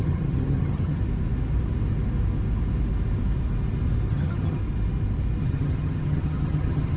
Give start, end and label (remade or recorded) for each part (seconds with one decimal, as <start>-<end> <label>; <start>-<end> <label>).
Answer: 0.0-1.0 remade; 1.0-4.1 recorded; 4.1-4.6 remade; 4.6-5.4 recorded; 5.4-7.0 remade